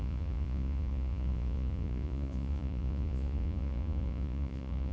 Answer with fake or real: fake